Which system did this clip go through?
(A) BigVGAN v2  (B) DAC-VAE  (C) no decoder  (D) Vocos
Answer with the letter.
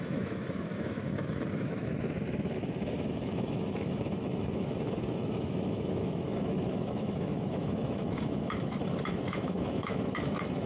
B